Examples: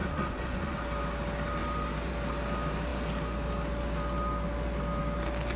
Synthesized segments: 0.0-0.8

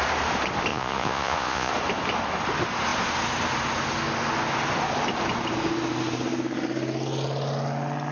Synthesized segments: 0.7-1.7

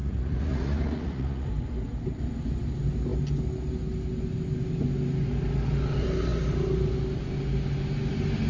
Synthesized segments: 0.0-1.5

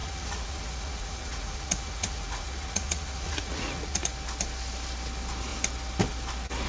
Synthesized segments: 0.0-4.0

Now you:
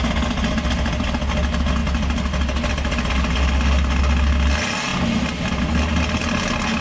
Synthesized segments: none

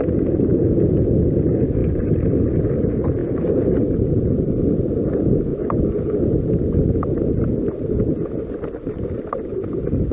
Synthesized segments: 0.5-1.1